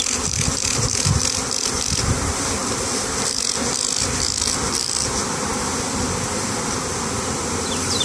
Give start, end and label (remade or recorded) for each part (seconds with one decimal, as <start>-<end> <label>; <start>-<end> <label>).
0.0-8.0 remade